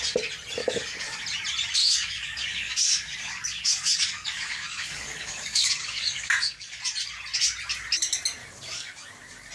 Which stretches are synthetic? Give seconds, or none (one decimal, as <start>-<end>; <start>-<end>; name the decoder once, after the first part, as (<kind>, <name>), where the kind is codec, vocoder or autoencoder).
0.6-1.2 (codec, DAC); 1.8-6.8; 8.4-9.5